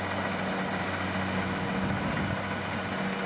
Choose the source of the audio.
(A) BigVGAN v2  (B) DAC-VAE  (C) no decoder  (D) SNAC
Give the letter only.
C